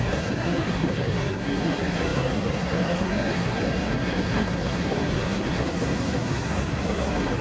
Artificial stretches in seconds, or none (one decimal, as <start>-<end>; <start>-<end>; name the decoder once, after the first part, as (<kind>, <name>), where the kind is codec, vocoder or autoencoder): 0.0-7.4 (codec, SNAC)